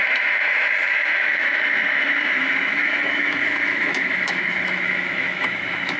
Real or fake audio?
fake